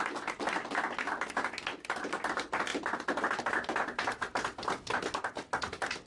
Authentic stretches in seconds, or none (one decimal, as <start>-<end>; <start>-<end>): 0.0-6.1